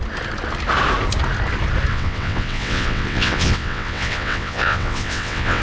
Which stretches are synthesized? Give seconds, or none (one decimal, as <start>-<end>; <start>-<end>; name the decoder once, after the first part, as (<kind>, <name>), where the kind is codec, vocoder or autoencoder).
1.9-5.6 (vocoder, WaveNeXt)

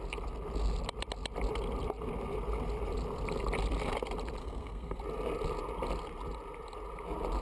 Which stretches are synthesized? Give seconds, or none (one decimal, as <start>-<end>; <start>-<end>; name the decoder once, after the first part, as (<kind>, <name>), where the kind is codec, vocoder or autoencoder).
4.4-5.0 (codec, SNAC)

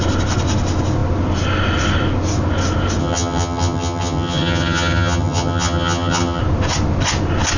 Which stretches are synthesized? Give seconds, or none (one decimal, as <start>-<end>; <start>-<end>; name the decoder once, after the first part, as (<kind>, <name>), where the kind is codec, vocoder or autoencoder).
3.0-6.4 (vocoder, HiFi-GAN)

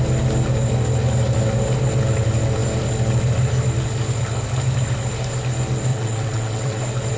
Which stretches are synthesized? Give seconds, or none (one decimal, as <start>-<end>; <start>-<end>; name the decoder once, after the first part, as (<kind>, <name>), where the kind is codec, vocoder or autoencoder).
5.9-6.8 (vocoder, WaveNeXt)

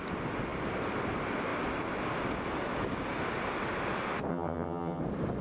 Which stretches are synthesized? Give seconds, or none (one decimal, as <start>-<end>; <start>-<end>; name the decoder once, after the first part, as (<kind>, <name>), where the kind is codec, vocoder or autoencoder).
4.3-5.0 (vocoder, HiFi-GAN)

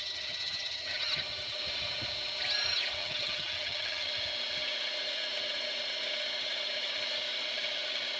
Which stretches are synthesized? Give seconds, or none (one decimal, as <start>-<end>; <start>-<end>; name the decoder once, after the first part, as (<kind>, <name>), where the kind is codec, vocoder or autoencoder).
0.0-1.2 (vocoder, HiFi-GAN); 3.0-4.1